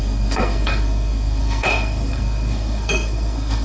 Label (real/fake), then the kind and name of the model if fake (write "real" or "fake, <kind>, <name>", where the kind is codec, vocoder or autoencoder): fake, codec, SNAC